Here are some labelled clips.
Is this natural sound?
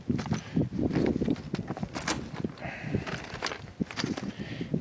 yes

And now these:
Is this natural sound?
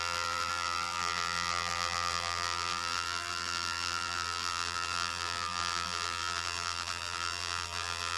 no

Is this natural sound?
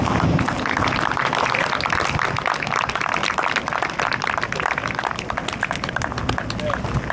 yes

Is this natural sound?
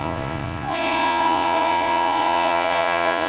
no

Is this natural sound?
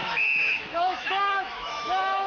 no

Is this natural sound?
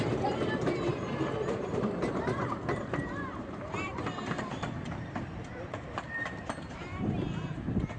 no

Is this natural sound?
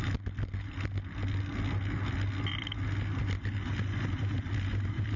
yes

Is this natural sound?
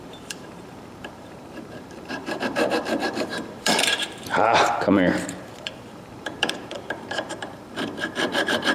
no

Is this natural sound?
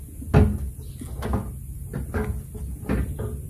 yes